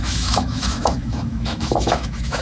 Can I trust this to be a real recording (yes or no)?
no